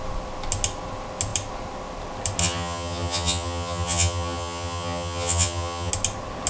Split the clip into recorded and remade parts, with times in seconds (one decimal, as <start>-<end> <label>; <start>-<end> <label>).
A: 0.0-2.4 recorded; 2.4-5.9 remade; 5.9-6.5 recorded

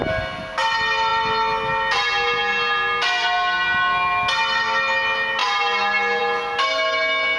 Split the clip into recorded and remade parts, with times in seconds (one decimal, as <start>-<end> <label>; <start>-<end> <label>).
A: 0.0-7.4 recorded